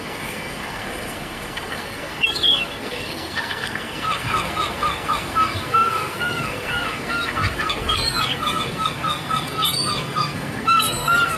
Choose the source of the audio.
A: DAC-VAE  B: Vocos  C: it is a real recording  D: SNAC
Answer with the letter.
D